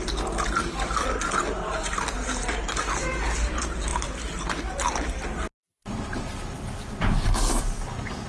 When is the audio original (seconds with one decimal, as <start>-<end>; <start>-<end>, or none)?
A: 0.0-8.3